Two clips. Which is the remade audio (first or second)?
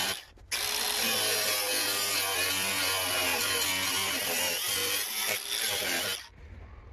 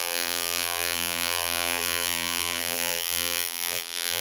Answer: second